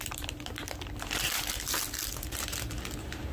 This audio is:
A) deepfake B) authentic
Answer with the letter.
A